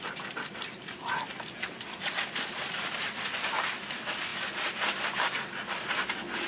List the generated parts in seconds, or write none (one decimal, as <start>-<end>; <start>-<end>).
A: 0.0-4.3